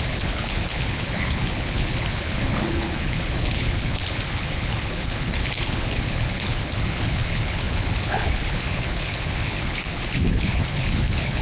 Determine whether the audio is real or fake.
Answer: fake